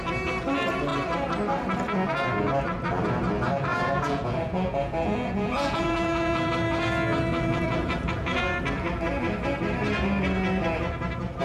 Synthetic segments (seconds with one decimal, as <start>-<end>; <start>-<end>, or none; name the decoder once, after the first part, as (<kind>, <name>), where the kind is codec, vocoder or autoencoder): 3.7-6.5 (vocoder, Vocos); 7.3-8.4